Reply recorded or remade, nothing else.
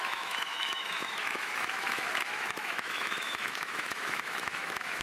remade